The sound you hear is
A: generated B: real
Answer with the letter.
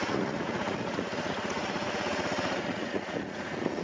A